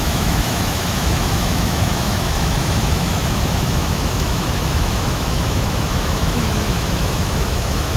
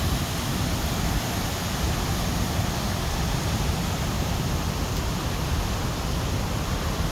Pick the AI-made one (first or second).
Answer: first